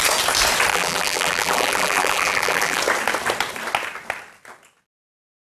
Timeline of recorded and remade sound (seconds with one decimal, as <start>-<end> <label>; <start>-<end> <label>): 0.0-0.7 recorded; 0.7-2.8 remade; 2.8-5.6 recorded